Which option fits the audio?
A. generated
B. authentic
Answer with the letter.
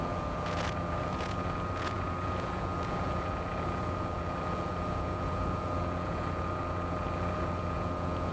A